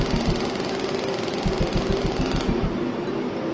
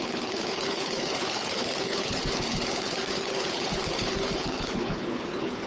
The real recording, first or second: first